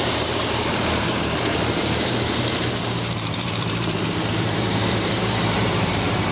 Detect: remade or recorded remade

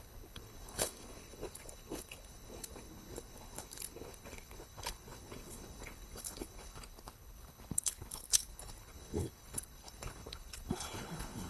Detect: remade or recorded remade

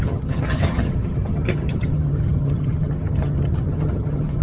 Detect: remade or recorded remade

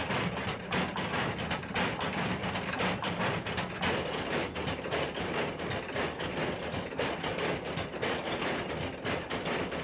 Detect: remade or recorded recorded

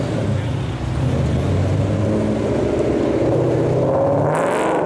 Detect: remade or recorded recorded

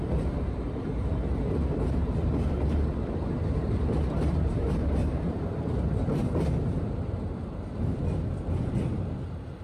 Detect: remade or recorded remade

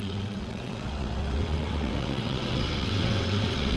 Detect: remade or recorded remade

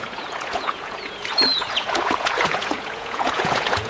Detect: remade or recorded remade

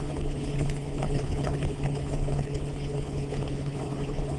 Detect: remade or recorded remade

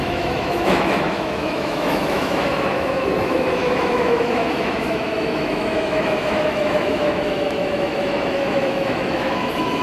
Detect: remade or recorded remade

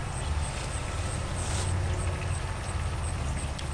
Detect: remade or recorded recorded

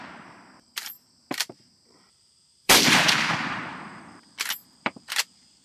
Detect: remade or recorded remade